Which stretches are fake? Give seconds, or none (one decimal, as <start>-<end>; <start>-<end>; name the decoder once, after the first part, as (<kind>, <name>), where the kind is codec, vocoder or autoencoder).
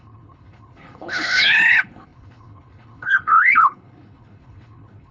0.0-5.1 (codec, HILCodec)